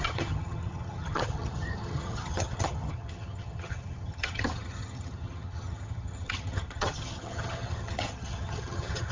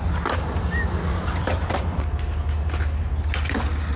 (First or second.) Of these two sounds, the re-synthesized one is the first